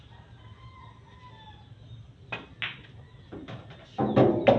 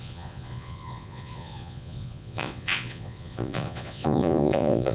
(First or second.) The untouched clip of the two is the first